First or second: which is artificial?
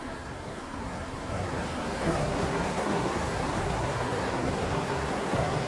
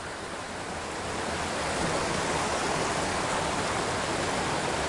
first